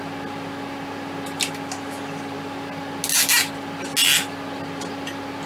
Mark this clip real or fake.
real